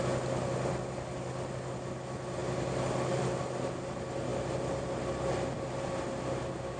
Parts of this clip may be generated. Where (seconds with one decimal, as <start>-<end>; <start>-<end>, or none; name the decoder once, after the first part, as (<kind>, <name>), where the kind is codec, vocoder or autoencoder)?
none